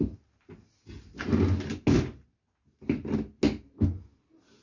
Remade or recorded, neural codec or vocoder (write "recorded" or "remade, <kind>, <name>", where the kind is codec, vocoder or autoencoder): recorded